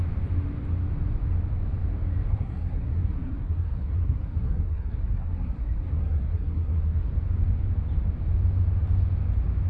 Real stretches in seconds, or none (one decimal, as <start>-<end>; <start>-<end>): 0.0-2.3; 7.1-9.7